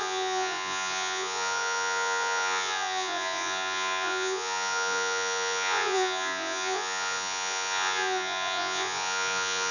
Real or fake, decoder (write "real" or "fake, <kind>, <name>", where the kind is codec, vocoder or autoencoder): fake, vocoder, Vocos